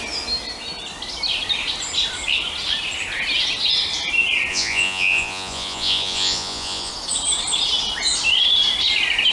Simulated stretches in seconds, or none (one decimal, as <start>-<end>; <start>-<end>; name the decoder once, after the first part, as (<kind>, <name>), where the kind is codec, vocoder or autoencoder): 4.5-6.9 (vocoder, Vocos)